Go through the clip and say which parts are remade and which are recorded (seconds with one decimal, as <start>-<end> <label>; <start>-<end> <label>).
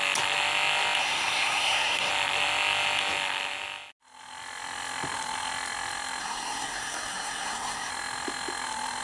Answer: 0.0-1.0 recorded; 1.0-2.1 remade; 2.1-6.2 recorded; 6.2-7.9 remade; 7.9-9.0 recorded